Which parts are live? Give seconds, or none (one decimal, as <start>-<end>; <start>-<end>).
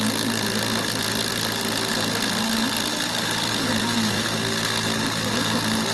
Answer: 0.0-5.9